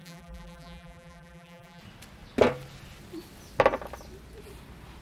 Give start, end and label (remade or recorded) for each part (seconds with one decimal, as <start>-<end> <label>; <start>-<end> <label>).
0.0-1.8 remade; 1.8-5.0 recorded